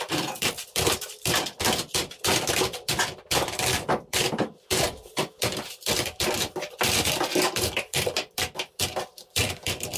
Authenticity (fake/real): fake